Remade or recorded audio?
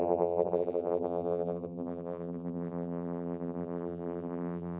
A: remade